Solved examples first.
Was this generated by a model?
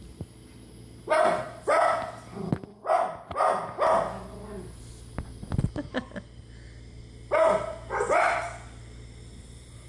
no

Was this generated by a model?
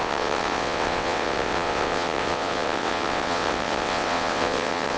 yes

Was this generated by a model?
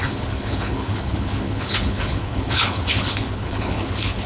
yes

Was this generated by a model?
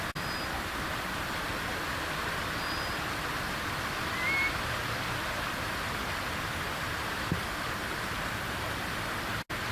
no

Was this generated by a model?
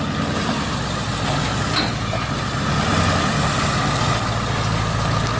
no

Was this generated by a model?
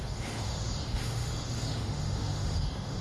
yes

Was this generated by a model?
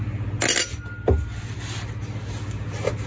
no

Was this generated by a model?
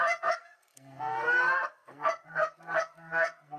yes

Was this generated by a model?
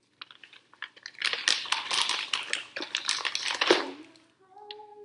no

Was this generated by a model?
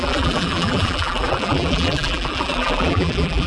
yes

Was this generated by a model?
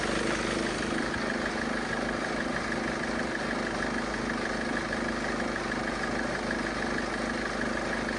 no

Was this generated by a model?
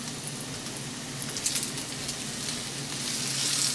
no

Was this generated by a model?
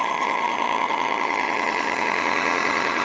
yes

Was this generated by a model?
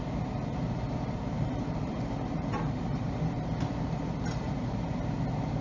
yes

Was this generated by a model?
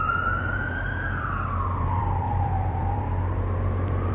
yes